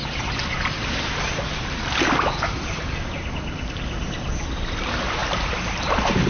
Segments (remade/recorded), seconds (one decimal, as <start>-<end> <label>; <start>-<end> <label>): 0.0-6.3 recorded